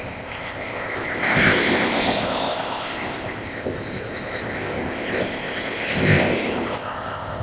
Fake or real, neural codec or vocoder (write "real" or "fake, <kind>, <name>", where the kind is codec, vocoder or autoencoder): fake, codec, ZipCodec